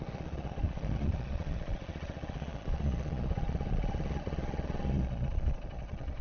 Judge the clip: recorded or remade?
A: remade